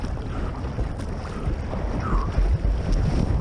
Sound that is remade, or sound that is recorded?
recorded